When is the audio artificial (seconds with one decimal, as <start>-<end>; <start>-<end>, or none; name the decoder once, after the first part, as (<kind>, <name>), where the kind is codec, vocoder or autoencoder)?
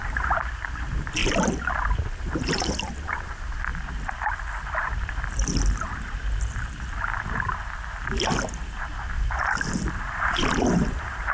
0.0-1.2 (vocoder, BigVGAN v2); 2.1-3.7; 8.9-11.3